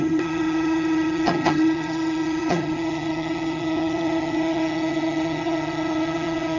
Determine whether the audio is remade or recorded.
remade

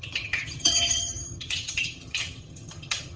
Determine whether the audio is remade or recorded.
remade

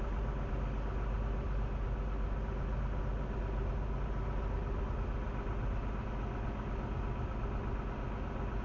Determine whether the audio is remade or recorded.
recorded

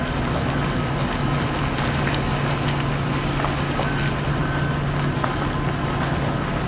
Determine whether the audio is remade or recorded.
recorded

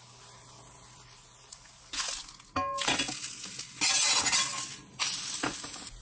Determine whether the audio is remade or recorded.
recorded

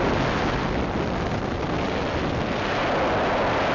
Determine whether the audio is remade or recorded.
recorded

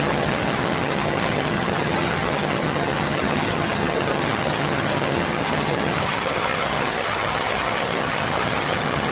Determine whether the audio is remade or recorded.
remade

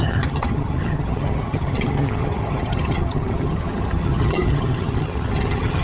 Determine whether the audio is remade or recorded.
remade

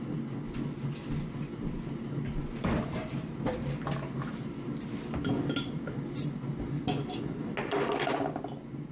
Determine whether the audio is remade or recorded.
recorded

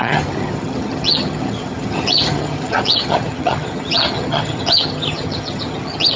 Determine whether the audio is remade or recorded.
remade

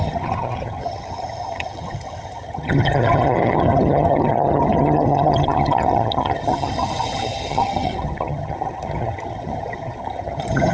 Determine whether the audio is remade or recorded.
remade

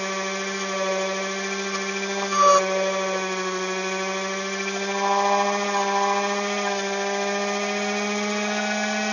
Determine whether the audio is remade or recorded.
recorded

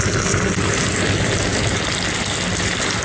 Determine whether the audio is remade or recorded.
recorded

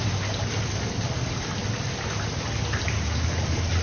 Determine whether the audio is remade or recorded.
recorded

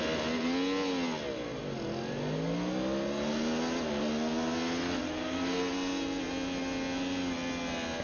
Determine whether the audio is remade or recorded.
recorded